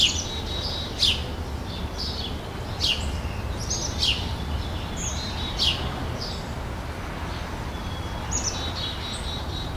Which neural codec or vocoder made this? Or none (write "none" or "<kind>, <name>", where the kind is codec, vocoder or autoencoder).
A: none